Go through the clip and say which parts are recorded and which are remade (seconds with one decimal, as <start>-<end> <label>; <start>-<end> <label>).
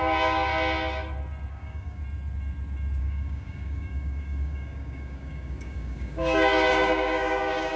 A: 0.0-0.5 remade; 0.5-1.5 recorded; 1.5-2.0 remade; 2.0-3.0 recorded; 3.0-7.8 remade